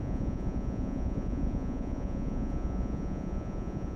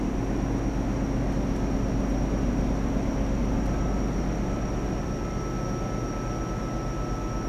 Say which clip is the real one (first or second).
second